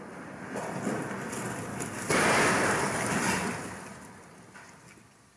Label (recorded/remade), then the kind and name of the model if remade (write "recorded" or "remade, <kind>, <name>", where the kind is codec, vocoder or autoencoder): recorded